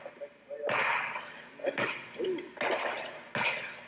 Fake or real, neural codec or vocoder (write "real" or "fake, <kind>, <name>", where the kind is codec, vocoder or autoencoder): real